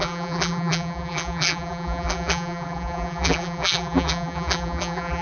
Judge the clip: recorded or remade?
remade